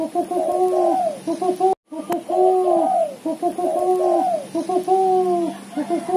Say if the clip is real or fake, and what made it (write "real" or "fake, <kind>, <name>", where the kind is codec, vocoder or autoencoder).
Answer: real